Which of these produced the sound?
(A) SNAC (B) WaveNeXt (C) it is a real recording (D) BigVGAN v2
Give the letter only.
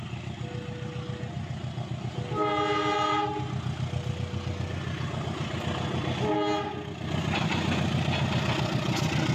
C